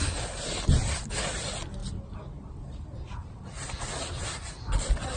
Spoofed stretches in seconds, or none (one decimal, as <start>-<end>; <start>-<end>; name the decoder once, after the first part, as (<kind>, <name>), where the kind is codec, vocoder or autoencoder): none